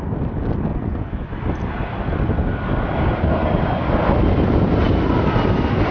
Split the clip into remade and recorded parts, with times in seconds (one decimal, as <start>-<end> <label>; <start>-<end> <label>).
0.0-0.7 recorded; 0.7-1.4 remade; 1.4-5.9 recorded